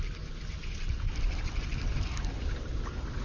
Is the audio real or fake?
real